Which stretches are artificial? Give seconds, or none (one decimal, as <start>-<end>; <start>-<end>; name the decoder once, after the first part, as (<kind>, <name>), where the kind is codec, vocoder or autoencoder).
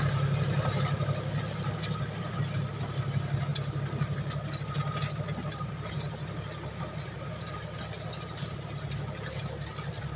none